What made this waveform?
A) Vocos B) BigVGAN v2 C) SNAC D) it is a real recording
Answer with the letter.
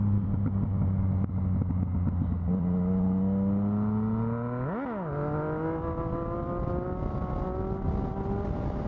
D